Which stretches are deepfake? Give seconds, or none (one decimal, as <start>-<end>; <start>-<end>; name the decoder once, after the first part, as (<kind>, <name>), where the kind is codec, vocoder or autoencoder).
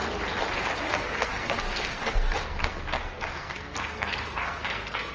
0.9-5.1 (codec, SNAC)